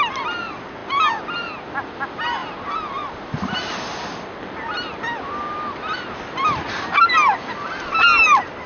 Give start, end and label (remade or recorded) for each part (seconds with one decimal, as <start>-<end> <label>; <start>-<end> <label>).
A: 0.0-8.7 recorded